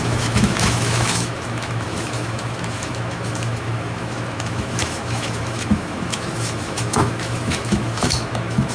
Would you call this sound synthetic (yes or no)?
yes